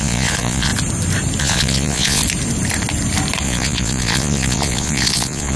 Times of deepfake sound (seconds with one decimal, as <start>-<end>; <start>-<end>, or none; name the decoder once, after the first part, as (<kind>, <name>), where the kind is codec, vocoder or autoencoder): 0.0-0.7 (vocoder, Vocos); 1.4-2.2; 3.4-5.6